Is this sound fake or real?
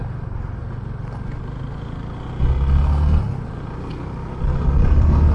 real